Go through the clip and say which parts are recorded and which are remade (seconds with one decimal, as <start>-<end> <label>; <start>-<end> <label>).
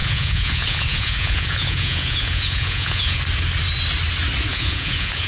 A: 0.0-3.2 remade; 3.2-4.5 recorded; 4.5-5.3 remade